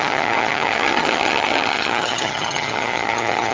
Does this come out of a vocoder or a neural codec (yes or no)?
yes